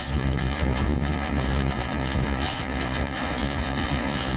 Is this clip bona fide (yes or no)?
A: no